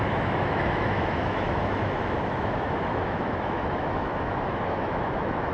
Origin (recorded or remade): remade